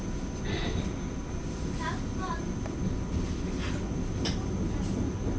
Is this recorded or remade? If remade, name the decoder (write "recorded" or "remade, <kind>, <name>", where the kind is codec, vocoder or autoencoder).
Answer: recorded